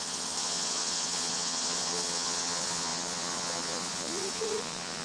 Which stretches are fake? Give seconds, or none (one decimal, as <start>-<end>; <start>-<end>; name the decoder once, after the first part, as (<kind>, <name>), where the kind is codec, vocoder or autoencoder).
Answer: 0.0-5.0 (vocoder, Vocos)